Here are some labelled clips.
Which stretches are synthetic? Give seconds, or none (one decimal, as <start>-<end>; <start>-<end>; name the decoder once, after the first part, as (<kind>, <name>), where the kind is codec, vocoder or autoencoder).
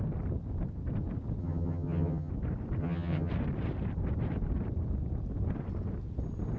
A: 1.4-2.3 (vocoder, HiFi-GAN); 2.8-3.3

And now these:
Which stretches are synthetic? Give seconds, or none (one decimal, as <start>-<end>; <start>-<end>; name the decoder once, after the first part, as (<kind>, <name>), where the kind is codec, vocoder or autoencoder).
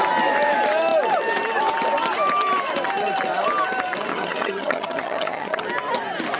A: 4.1-5.6 (vocoder, HiFi-GAN)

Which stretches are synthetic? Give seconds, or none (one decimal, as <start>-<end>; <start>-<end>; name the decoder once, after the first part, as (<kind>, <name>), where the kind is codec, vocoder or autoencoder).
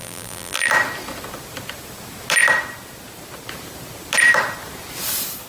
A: 0.0-0.7 (vocoder, BigVGAN v2)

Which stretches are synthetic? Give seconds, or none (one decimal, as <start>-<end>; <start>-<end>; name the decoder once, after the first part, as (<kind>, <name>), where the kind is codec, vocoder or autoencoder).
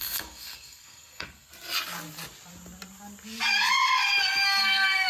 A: 0.0-1.5 (codec, SNAC); 4.6-5.1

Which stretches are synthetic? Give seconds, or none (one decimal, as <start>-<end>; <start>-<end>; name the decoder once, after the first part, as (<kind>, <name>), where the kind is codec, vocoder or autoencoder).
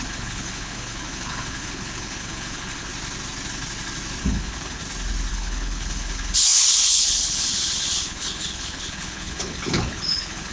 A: 0.0-2.9 (codec, HILCodec); 4.2-4.8; 5.3-10.5